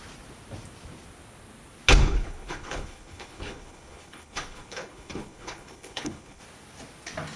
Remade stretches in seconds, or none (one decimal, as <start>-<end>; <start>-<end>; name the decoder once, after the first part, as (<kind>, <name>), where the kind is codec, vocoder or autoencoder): 2.0-6.4 (codec, HILCodec)